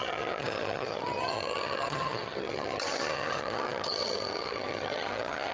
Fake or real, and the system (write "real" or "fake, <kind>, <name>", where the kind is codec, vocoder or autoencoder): fake, vocoder, HiFi-GAN